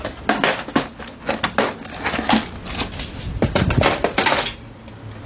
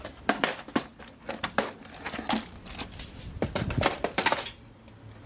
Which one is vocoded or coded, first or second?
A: second